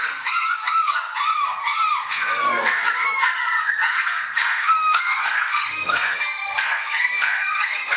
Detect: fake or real fake